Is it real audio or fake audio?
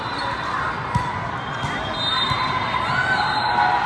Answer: real